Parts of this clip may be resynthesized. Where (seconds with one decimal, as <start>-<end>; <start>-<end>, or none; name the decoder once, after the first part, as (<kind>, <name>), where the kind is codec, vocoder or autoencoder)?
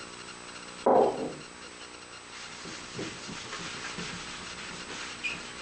none